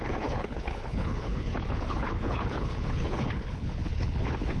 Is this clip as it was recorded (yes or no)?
no